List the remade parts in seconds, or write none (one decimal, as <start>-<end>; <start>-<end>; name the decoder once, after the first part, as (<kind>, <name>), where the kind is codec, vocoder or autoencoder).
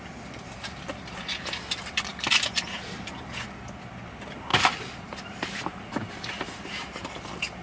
2.1-3.2 (vocoder, BigVGAN v2); 4.5-7.0